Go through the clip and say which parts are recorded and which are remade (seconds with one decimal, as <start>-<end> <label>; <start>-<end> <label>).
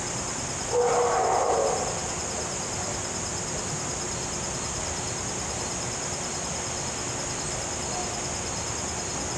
0.0-9.4 recorded